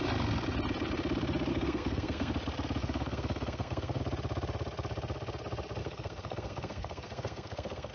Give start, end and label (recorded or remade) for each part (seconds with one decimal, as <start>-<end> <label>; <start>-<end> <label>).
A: 0.0-1.5 recorded; 1.5-2.3 remade; 2.3-2.8 recorded; 2.8-4.0 remade; 4.0-5.8 recorded; 5.8-7.9 remade